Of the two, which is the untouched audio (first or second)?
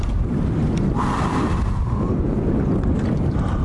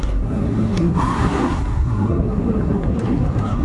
first